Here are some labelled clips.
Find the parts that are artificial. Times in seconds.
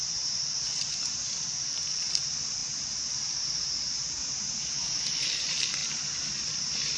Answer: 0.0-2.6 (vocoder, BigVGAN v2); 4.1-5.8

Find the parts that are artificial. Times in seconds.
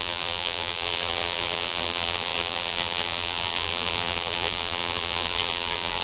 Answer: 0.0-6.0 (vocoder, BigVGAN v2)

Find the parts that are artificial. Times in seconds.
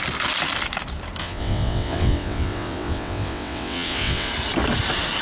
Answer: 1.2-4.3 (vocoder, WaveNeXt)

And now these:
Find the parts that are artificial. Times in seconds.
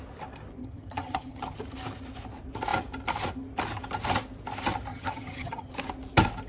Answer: 0.6-1.6 (vocoder, HiFi-GAN); 4.9-5.7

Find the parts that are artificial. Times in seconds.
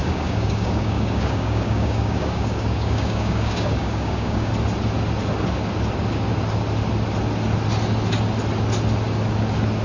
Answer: 0.0-4.5 (codec, DAC)